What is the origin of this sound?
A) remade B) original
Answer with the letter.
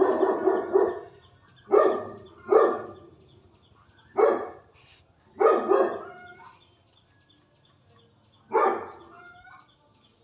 B